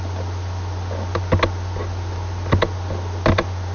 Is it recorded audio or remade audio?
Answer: recorded